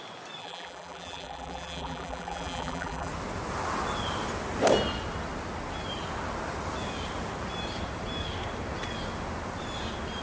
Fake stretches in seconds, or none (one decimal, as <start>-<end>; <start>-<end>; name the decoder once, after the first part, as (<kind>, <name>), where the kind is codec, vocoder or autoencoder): 0.4-3.1 (vocoder, BigVGAN v2)